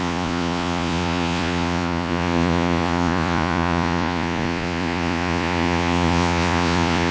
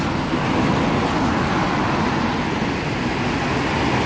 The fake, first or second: first